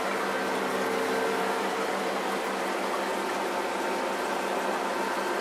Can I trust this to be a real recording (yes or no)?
yes